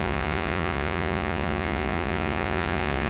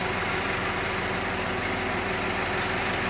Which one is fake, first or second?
first